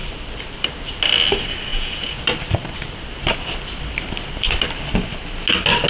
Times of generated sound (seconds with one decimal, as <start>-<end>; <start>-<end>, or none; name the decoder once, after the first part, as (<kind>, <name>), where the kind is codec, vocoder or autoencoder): 1.7-2.2 (vocoder, Vocos)